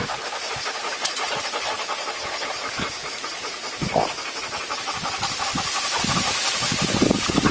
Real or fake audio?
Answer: real